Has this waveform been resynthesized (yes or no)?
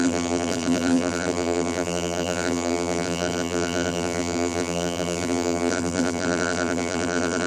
yes